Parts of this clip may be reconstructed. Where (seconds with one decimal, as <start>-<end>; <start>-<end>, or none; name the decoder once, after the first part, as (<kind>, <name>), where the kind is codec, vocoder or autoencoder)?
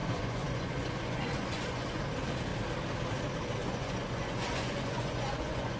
0.0-2.0 (vocoder, Vocos); 3.6-5.8